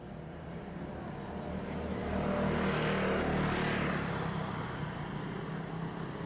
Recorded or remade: recorded